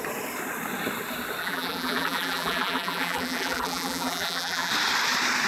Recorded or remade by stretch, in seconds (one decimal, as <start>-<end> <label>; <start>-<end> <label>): 0.0-1.4 recorded; 1.4-4.7 remade; 4.7-5.5 recorded